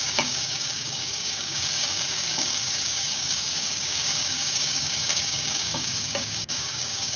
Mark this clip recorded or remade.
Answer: remade